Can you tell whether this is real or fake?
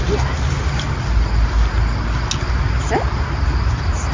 real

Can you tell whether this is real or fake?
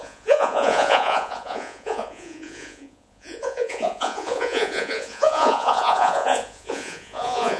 fake